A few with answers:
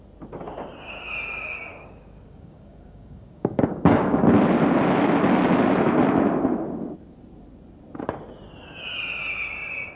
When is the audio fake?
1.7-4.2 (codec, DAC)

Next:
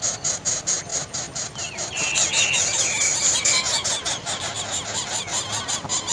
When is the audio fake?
none

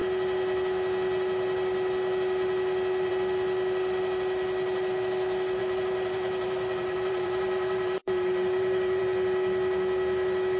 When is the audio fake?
5.6-9.0 (vocoder, BigVGAN v2)

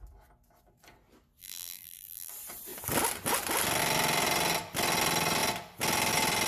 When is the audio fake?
1.4-2.3 (vocoder, BigVGAN v2)

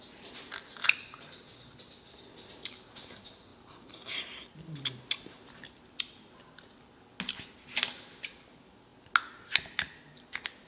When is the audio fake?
none